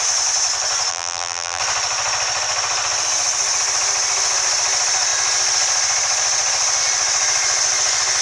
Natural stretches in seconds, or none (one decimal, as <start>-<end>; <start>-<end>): 0.0-0.9; 1.6-8.2